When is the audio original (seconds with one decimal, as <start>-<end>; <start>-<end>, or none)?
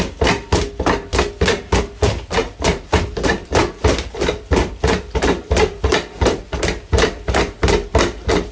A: 0.0-2.4; 6.4-8.5